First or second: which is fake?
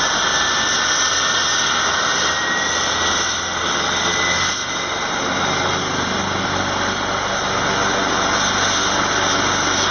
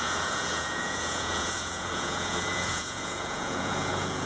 second